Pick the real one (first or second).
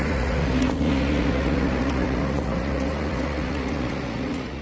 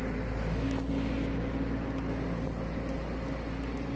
second